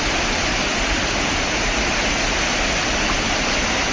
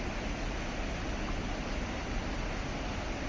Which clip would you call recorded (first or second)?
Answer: second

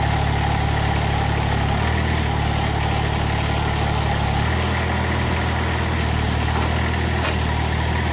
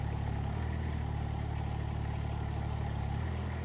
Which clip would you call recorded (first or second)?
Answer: first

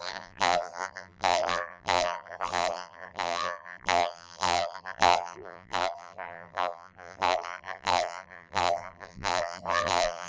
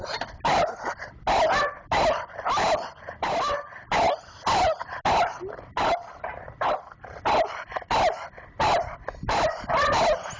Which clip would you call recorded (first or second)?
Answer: second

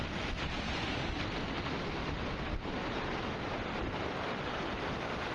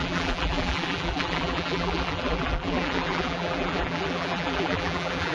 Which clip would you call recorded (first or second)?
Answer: first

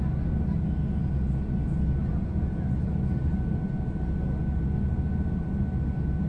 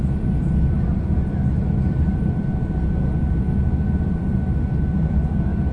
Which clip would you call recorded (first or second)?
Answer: first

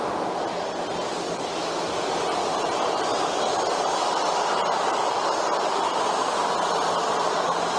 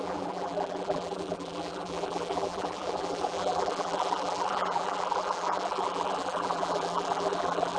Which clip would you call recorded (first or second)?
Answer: first